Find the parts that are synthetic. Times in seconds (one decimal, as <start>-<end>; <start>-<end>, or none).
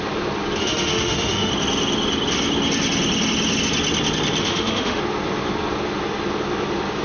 0.6-1.5; 4.4-5.0